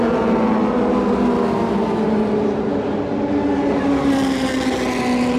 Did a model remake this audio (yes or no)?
no